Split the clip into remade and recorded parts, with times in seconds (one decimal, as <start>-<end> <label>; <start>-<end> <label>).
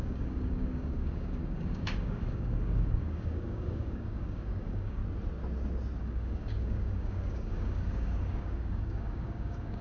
0.0-5.0 remade; 5.0-6.0 recorded; 6.0-9.8 remade